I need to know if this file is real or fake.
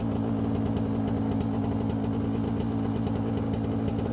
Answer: real